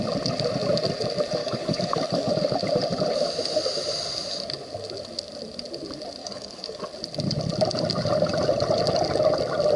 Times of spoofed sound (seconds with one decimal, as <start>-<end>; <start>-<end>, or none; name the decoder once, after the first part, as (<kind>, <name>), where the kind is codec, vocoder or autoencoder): 1.4-2.3 (codec, DAC); 6.2-6.8

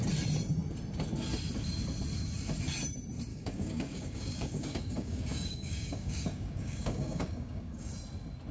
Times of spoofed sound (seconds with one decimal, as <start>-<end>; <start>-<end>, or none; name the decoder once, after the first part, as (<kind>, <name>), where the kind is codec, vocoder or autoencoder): 3.3-7.9 (codec, DAC)